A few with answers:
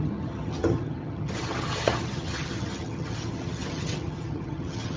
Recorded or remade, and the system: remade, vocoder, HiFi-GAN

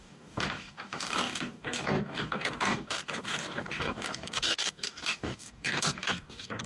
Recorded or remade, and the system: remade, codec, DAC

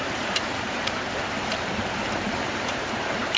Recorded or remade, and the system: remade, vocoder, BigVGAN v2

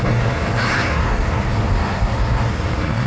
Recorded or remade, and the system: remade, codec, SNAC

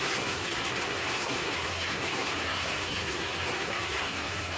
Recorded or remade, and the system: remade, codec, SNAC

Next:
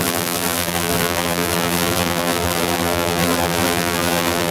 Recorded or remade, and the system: remade, vocoder, BigVGAN v2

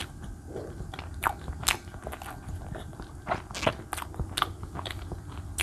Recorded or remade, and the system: recorded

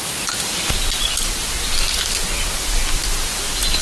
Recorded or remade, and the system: recorded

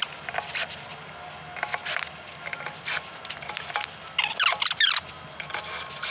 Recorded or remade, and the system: recorded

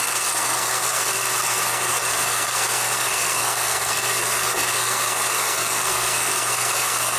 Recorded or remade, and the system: remade, codec, SNAC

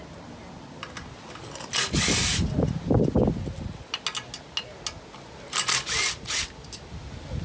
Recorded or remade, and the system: recorded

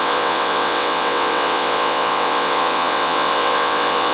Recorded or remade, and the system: remade, vocoder, WaveNeXt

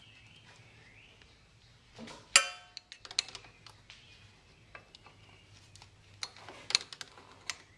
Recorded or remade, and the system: recorded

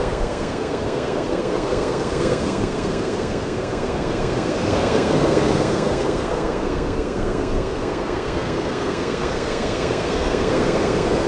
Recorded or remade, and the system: remade, codec, SNAC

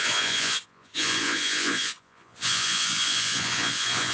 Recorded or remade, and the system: remade, vocoder, Vocos